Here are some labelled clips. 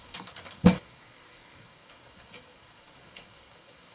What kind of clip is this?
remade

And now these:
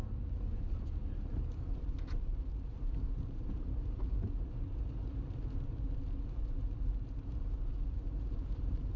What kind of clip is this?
remade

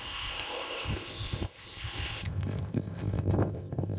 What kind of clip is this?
remade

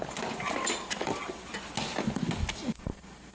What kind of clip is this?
recorded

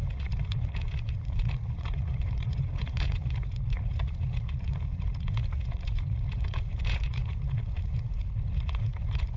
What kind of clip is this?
remade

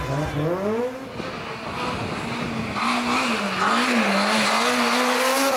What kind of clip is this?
recorded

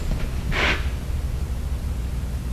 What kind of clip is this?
recorded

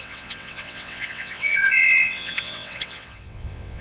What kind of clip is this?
remade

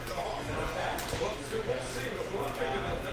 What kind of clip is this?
recorded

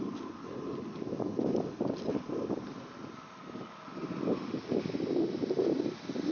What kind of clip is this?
recorded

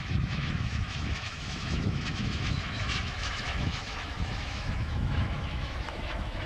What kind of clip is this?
remade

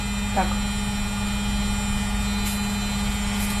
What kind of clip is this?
recorded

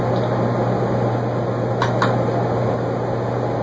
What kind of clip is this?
recorded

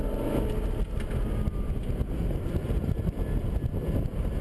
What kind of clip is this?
recorded